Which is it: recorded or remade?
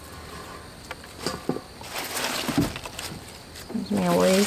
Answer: recorded